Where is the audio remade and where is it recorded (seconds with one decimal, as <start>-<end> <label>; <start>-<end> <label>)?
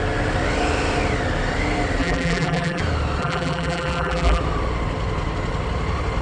0.0-2.0 recorded; 2.0-2.8 remade; 2.8-3.2 recorded; 3.2-4.4 remade; 4.4-6.2 recorded